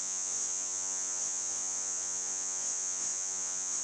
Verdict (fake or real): fake